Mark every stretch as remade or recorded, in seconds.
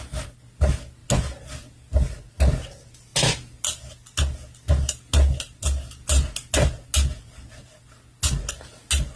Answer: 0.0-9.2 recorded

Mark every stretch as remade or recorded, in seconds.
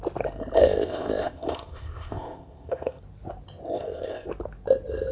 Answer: 0.0-0.6 recorded; 0.6-3.0 remade; 3.0-3.7 recorded; 3.7-4.3 remade; 4.3-5.1 recorded